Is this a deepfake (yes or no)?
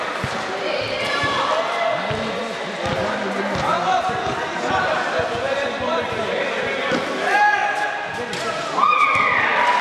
no